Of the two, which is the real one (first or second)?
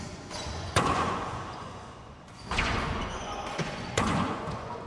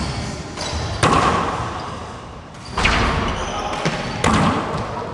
second